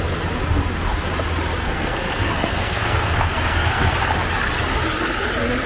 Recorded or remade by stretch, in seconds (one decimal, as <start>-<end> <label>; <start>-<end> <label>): 0.0-1.6 recorded; 1.6-3.9 remade; 3.9-5.7 recorded